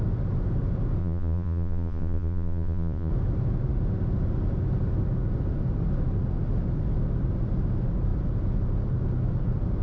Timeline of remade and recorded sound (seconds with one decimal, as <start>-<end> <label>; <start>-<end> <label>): 0.0-1.0 recorded; 1.0-3.1 remade; 3.1-9.8 recorded